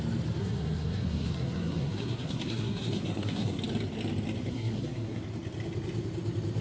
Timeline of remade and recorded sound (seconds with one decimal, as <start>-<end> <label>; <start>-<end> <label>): 0.0-0.4 recorded; 0.4-3.6 remade; 3.6-4.5 recorded; 4.5-5.2 remade; 5.2-6.6 recorded